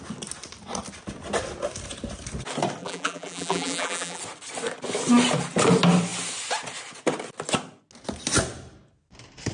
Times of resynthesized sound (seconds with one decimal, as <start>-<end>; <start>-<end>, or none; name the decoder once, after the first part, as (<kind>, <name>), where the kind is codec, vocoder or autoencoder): 2.8-4.2 (vocoder, BigVGAN v2)